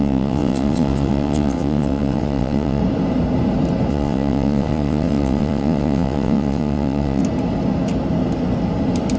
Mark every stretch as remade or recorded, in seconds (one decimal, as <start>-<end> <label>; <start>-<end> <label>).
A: 0.0-2.8 remade; 2.8-3.9 recorded; 3.9-7.2 remade; 7.2-9.2 recorded